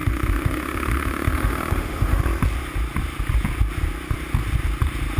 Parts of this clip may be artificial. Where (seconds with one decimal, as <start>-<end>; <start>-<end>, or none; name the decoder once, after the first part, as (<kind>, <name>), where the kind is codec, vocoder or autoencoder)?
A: 0.0-2.2 (autoencoder, DAC-VAE)